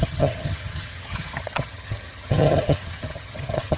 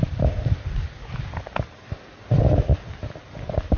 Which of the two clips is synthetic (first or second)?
first